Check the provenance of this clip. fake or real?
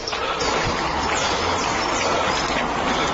fake